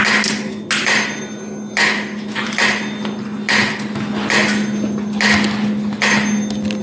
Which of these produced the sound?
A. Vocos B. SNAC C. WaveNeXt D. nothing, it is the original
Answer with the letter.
D